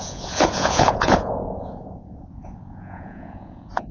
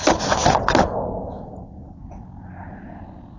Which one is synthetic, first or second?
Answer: first